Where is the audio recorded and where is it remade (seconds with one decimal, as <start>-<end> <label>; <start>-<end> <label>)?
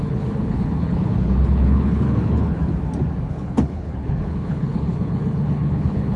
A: 0.0-2.6 remade; 2.6-3.3 recorded; 3.3-6.2 remade